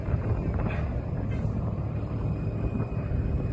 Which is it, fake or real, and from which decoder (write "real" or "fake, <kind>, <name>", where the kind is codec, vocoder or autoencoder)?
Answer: fake, vocoder, BigVGAN v2